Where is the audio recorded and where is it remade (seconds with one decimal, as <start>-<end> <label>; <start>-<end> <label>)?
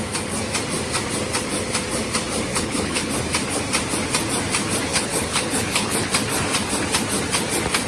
0.0-2.5 recorded; 2.5-3.1 remade; 3.1-4.9 recorded; 4.9-6.1 remade; 6.1-7.9 recorded